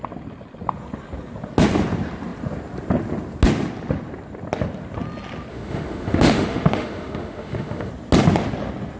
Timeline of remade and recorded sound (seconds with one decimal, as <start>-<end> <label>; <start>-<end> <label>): 0.0-5.5 recorded; 5.5-7.9 remade; 7.9-9.0 recorded